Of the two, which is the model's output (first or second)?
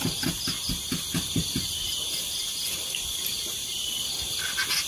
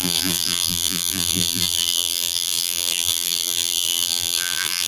second